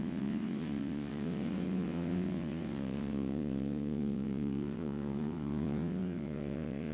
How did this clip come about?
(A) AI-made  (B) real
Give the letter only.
A